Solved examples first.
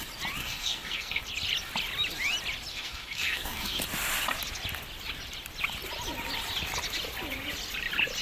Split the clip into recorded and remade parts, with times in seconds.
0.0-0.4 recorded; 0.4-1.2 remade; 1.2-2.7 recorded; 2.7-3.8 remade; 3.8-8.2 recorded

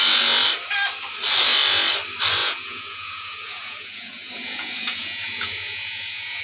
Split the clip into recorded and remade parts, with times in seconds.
0.0-2.4 recorded; 2.4-6.4 remade